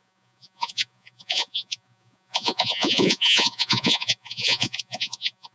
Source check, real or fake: fake